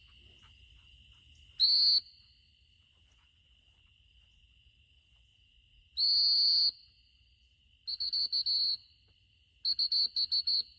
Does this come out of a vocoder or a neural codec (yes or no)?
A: no